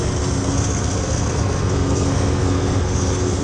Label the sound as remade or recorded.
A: remade